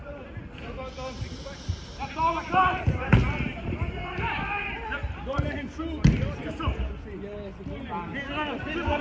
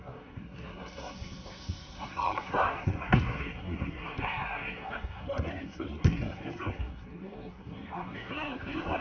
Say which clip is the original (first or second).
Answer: first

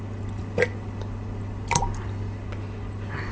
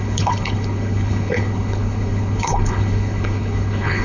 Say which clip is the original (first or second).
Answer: first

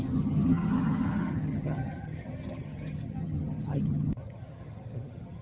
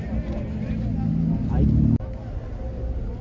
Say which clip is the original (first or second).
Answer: second